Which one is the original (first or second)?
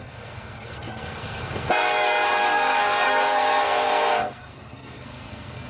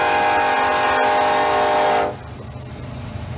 second